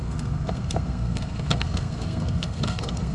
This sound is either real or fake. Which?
fake